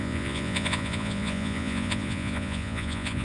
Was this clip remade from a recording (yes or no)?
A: yes